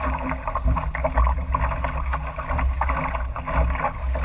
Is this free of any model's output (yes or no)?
yes